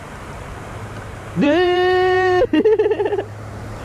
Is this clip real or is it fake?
fake